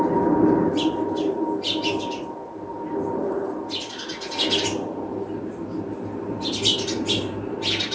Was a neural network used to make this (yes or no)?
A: no